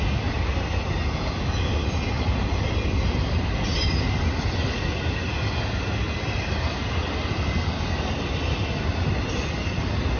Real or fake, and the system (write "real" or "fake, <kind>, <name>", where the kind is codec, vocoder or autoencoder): real